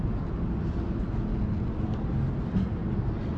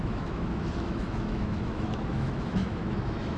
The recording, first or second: first